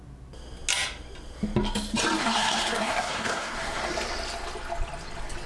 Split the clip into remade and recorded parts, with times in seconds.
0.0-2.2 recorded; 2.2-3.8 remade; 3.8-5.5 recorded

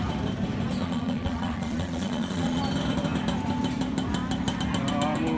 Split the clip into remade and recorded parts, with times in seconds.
0.0-0.8 recorded; 0.8-2.6 remade; 2.6-5.4 recorded

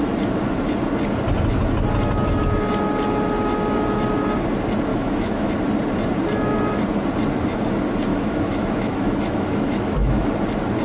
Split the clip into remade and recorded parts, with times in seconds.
0.0-4.9 recorded; 4.9-5.5 remade; 5.5-8.1 recorded; 8.1-10.3 remade; 10.3-10.8 recorded

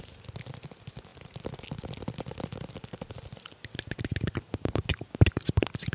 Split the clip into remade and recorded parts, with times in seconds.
0.0-5.9 recorded